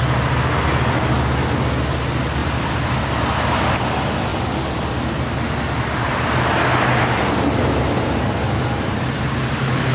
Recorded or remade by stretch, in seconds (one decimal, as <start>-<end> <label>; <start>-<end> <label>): 0.0-2.4 recorded; 2.4-3.0 remade; 3.0-9.9 recorded